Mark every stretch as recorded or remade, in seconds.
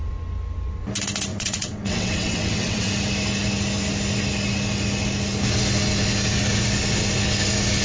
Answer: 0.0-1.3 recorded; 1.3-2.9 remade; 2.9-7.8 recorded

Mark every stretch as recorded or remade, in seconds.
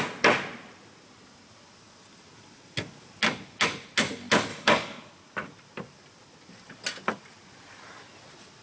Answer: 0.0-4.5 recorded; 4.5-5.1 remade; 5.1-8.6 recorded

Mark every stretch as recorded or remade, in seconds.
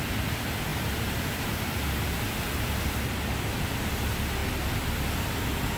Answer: 0.0-5.8 recorded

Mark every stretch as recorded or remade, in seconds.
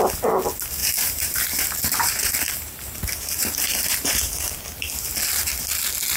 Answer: 0.0-0.8 recorded; 0.8-4.5 remade; 4.5-6.2 recorded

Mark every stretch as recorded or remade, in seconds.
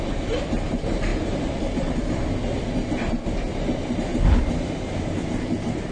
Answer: 0.0-1.1 recorded; 1.1-2.1 remade; 2.1-5.9 recorded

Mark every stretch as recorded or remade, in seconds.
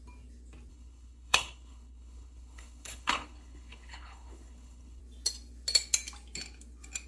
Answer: 0.0-0.7 recorded; 0.7-5.0 remade; 5.0-7.1 recorded